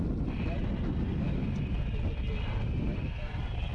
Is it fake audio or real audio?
real